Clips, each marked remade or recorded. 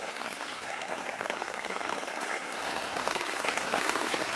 remade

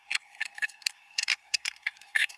remade